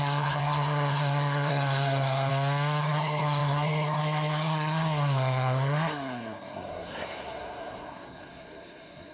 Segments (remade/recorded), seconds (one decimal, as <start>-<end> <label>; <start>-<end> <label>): 0.0-2.3 remade; 2.3-2.8 recorded; 2.8-9.1 remade